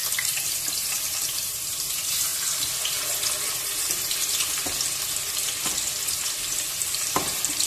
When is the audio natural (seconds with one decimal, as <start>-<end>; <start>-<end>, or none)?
0.0-0.7; 2.3-6.6